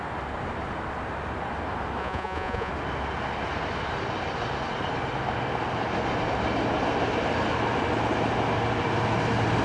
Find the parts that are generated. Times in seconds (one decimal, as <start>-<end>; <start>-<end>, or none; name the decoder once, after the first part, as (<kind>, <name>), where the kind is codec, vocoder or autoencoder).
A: 2.0-2.7 (vocoder, Vocos)